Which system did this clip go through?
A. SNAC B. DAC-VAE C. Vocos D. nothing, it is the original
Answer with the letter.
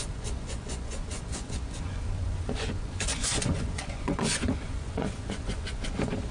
C